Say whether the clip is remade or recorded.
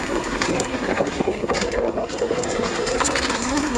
remade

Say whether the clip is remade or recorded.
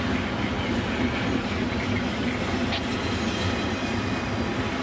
recorded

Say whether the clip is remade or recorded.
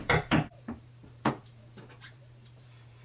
remade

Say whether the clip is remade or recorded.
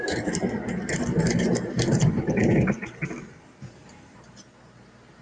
remade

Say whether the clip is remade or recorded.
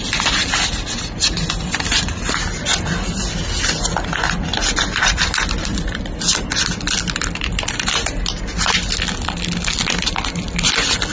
recorded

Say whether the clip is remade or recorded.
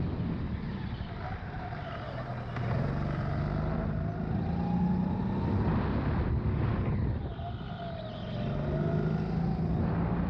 recorded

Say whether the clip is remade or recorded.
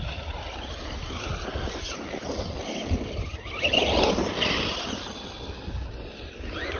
recorded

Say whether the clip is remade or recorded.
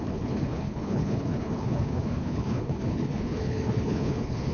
remade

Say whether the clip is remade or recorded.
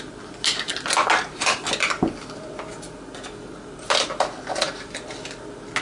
recorded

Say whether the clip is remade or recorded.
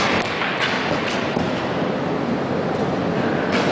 recorded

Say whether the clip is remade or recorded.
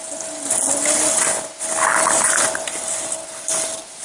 recorded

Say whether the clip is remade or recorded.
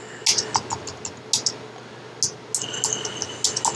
recorded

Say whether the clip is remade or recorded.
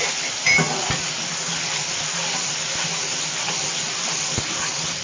recorded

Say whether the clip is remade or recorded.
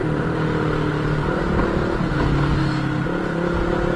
recorded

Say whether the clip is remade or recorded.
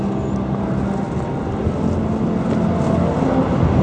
recorded